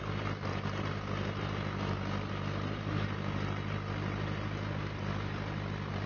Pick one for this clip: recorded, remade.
recorded